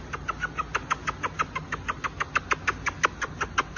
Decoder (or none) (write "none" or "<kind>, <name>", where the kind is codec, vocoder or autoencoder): none